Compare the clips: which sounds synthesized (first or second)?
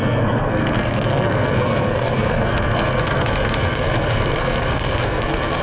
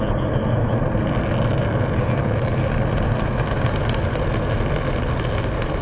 first